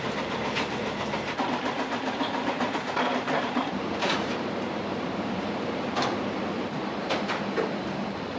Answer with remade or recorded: remade